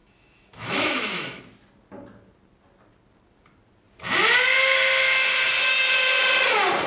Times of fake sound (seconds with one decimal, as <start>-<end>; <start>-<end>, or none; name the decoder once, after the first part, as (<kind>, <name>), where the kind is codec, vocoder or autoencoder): 0.0-1.4 (autoencoder, DAC-VAE)

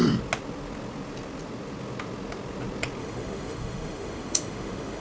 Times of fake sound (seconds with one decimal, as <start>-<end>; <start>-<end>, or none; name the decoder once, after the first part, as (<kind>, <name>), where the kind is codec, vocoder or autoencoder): 3.0-5.0 (autoencoder, DAC-VAE)

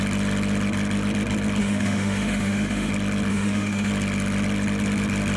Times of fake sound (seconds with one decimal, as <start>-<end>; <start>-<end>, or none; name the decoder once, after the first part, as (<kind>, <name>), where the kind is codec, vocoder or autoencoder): 1.6-2.9 (autoencoder, DAC-VAE); 3.3-3.9